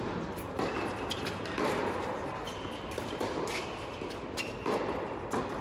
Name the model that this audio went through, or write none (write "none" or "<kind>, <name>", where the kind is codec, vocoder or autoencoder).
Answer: none